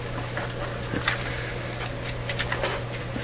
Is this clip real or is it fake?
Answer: real